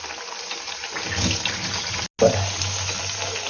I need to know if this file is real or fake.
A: real